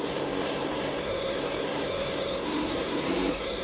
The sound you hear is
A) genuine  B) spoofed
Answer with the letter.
B